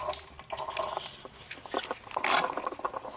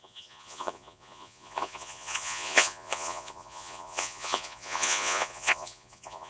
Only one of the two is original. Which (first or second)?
first